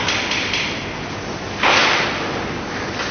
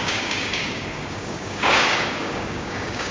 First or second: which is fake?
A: second